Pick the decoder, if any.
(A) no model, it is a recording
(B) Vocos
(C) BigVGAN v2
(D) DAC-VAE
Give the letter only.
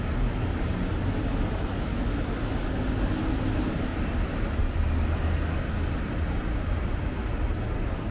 A